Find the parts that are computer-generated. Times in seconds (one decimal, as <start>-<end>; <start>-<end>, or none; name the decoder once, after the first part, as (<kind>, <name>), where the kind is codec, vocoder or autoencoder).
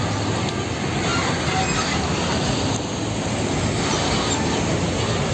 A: none